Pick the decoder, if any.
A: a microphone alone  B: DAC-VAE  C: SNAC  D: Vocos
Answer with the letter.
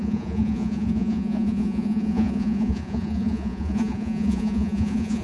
D